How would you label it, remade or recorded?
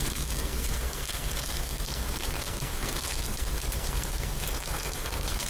remade